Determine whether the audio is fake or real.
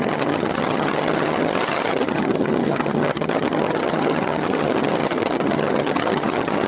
fake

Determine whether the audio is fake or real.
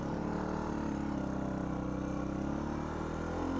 real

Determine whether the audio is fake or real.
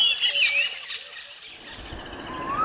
real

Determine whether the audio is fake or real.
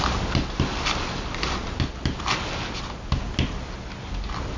real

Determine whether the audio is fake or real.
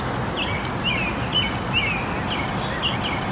real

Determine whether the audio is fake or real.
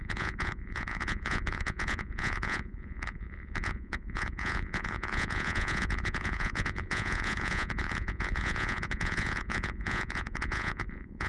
fake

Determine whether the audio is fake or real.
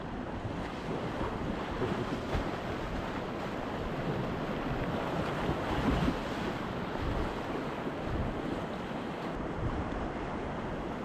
real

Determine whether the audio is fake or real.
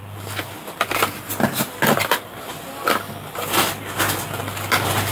real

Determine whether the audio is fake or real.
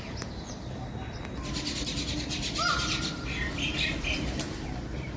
real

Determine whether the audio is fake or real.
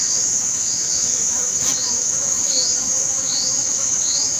fake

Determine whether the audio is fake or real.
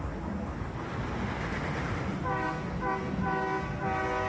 real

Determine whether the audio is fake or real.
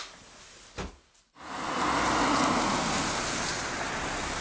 real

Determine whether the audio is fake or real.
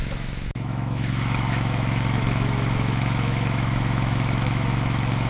fake